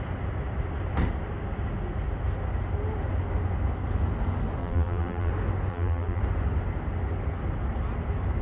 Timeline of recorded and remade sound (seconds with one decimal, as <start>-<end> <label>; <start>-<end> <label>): 0.0-4.6 recorded; 4.6-5.3 remade; 5.3-5.7 recorded; 5.7-6.2 remade; 6.2-8.4 recorded